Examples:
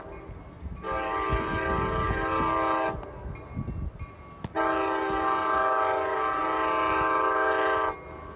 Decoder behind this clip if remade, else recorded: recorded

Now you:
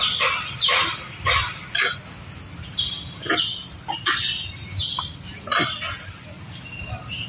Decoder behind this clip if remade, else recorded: recorded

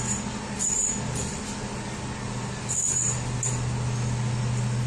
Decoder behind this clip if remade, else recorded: recorded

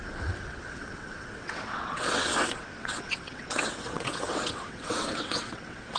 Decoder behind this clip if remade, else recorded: remade, vocoder, WaveNeXt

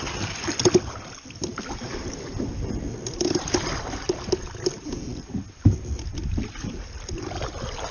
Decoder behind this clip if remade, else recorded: recorded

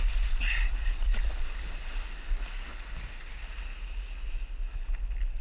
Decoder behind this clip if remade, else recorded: recorded